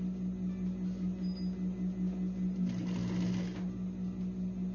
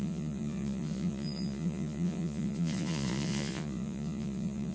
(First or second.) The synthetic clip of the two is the second